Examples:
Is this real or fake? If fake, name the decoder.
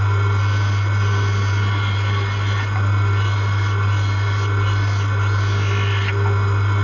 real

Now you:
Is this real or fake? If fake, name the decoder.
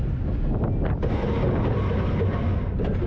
real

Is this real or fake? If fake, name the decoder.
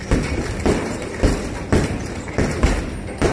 real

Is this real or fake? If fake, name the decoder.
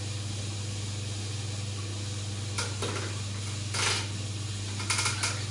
real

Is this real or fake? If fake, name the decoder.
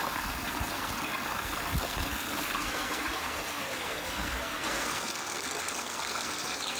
fake, codec, SNAC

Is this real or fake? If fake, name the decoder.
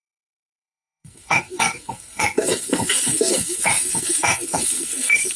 fake, codec, SNAC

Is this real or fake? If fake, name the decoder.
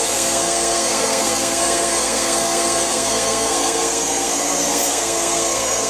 fake, codec, SNAC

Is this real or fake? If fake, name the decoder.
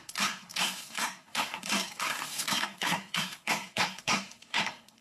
fake, codec, SNAC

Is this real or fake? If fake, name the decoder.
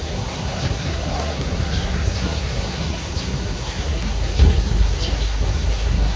fake, codec, SNAC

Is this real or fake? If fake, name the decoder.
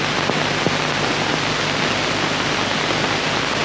real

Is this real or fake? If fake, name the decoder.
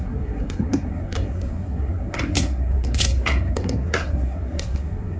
fake, codec, SNAC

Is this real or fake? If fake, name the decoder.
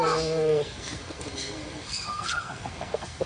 fake, codec, SNAC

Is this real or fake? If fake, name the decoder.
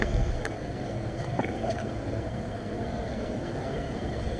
fake, codec, SNAC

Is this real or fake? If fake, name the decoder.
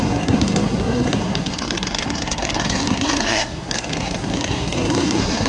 fake, codec, SNAC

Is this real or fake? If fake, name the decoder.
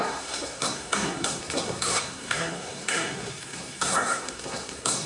fake, codec, SNAC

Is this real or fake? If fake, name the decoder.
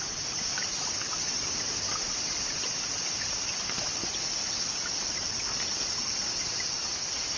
real